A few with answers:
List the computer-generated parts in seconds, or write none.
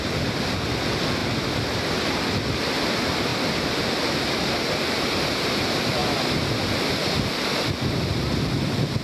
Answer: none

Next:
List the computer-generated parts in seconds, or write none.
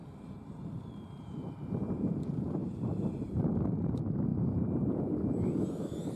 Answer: 0.0-3.4 (vocoder, BigVGAN v2); 4.3-5.2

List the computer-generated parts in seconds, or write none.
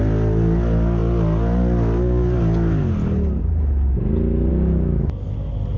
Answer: none